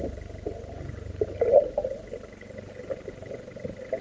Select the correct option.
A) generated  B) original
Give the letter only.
B